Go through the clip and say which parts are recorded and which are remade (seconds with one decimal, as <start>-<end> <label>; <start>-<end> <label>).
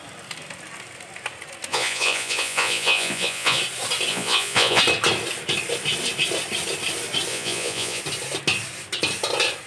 0.0-1.7 recorded; 1.7-3.6 remade; 3.6-4.1 recorded; 4.1-4.8 remade; 4.8-7.3 recorded; 7.3-8.0 remade; 8.0-9.7 recorded